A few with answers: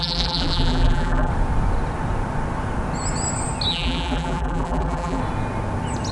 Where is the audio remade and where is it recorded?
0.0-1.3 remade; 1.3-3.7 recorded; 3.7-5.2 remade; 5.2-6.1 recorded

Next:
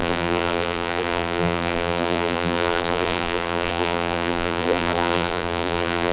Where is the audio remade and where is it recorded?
0.0-6.1 remade

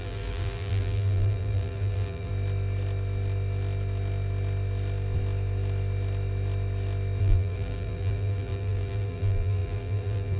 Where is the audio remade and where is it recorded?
0.0-2.3 remade; 2.3-7.2 recorded; 7.2-10.4 remade

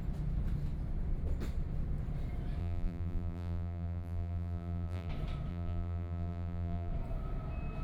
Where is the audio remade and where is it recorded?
0.0-2.6 recorded; 2.6-5.1 remade; 5.1-5.5 recorded; 5.5-6.9 remade; 6.9-7.8 recorded

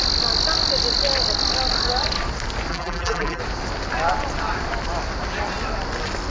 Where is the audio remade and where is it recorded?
0.0-2.7 recorded; 2.7-3.4 remade; 3.4-6.3 recorded

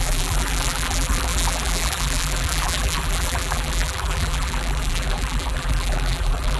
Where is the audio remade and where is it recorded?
0.0-6.6 remade

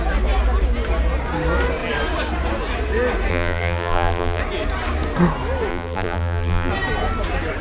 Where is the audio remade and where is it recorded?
0.0-3.3 recorded; 3.3-4.4 remade; 4.4-5.7 recorded; 5.7-6.7 remade; 6.7-7.6 recorded